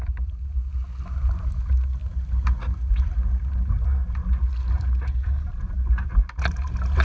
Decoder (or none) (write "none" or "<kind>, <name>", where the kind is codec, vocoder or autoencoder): none